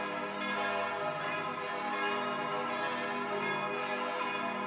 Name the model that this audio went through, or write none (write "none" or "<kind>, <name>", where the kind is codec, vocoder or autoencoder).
none